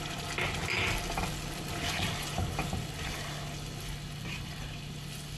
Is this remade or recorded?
recorded